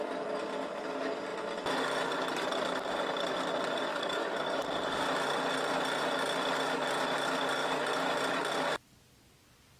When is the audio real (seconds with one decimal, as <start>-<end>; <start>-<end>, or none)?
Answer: 0.0-3.9; 4.6-9.8